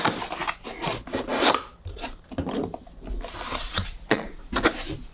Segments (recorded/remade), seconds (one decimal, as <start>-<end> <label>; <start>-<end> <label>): 0.0-3.5 recorded; 3.5-4.4 remade; 4.4-5.1 recorded